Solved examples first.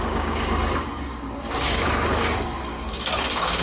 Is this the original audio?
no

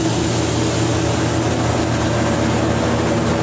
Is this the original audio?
yes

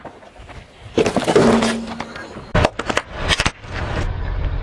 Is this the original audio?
yes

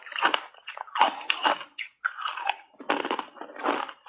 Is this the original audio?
yes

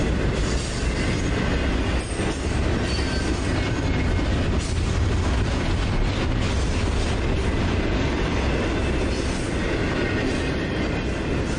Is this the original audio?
yes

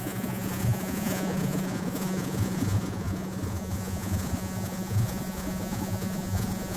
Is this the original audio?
no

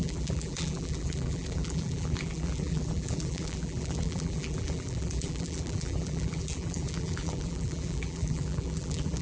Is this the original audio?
no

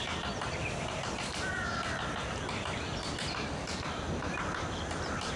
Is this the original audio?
yes